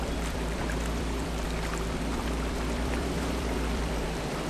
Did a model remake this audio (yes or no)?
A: yes